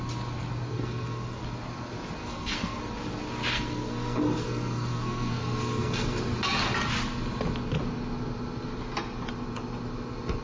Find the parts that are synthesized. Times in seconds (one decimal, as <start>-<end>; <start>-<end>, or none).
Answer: 0.7-1.4; 2.2-2.8; 3.5-6.2